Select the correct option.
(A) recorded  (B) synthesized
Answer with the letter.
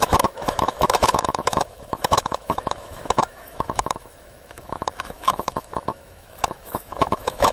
B